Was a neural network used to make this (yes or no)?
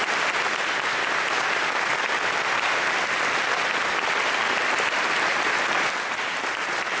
no